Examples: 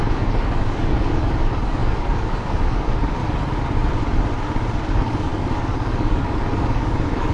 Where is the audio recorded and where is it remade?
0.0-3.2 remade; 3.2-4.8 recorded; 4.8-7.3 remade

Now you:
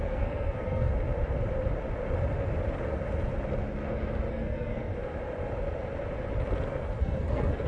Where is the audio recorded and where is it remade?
0.0-0.9 remade; 0.9-4.3 recorded; 4.3-4.9 remade; 4.9-7.0 recorded; 7.0-7.7 remade